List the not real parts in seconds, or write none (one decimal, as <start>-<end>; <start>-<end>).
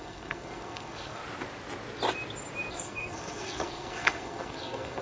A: 0.0-1.2; 2.7-5.0